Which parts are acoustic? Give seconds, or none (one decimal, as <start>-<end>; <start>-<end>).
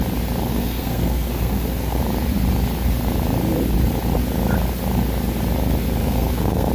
0.0-0.5; 2.0-6.0